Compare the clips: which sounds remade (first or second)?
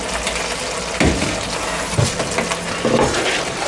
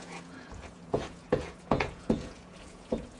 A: second